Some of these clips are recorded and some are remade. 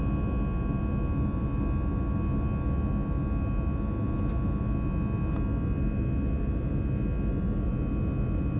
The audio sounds recorded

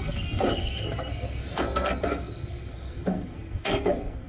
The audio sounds remade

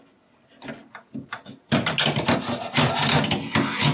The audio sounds recorded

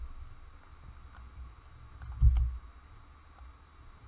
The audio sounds recorded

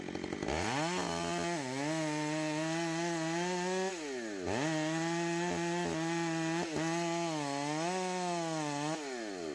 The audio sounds recorded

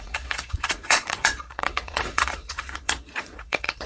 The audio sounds remade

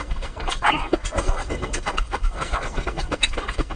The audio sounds remade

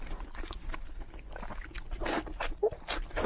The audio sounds recorded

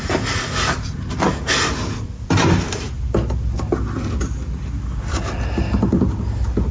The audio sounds recorded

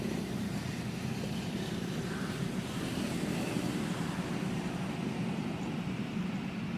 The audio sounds remade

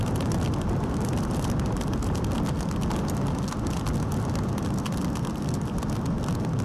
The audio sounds recorded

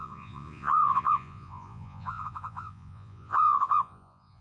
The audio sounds remade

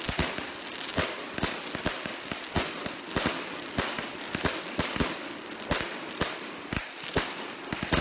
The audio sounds recorded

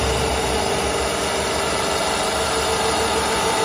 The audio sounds recorded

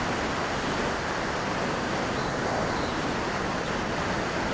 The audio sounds recorded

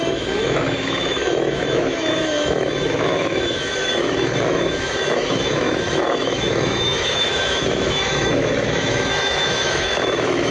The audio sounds remade